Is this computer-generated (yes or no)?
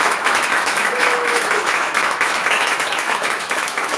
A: yes